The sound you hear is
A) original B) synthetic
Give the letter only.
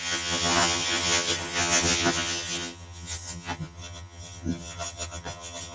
B